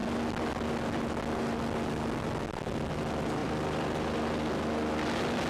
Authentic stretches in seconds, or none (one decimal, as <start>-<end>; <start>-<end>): 0.0-3.4; 4.3-5.5